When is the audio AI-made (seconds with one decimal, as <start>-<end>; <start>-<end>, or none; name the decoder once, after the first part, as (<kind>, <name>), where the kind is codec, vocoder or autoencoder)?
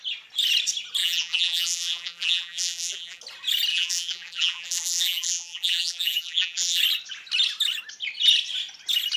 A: 1.0-3.2 (vocoder, BigVGAN v2); 3.7-6.8